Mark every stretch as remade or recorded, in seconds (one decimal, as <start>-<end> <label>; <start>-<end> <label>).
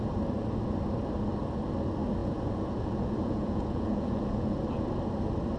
0.0-2.2 recorded; 2.2-4.7 remade; 4.7-5.6 recorded